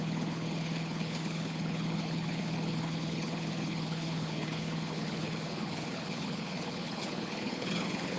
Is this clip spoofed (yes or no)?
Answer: yes